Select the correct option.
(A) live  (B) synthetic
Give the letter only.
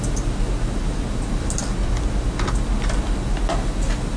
A